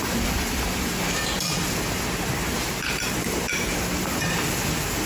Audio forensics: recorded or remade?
remade